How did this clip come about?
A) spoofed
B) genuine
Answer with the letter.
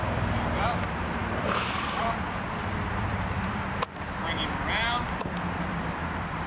A